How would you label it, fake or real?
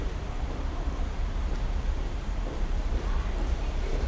fake